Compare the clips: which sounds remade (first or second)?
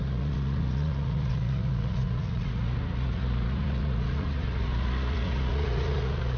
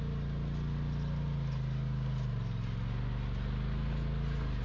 first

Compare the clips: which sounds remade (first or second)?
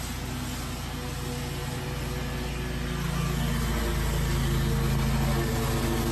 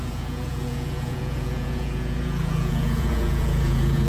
second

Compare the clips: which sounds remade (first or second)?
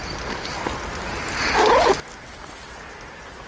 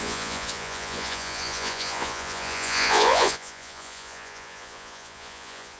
second